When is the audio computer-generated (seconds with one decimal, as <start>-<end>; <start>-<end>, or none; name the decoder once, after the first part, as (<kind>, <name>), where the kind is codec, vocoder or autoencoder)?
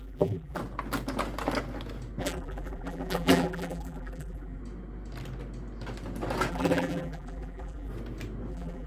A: 0.0-0.6 (vocoder, BigVGAN v2); 2.2-4.6; 6.5-7.9; 8.5-8.9